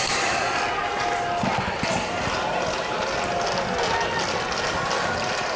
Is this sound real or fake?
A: real